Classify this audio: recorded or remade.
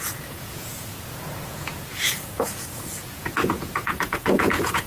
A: remade